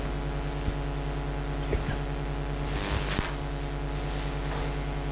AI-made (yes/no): no